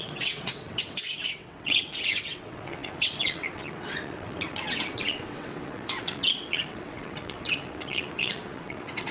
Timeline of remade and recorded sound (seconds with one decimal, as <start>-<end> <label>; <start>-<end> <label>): 0.0-9.1 remade